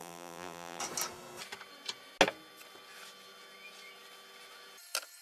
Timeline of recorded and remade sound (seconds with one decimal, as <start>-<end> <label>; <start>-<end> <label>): 0.0-0.8 remade; 0.8-5.2 recorded